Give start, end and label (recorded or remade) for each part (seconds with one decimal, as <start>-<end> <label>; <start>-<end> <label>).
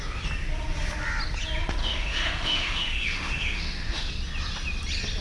0.0-1.8 recorded; 1.8-4.1 remade; 4.1-5.2 recorded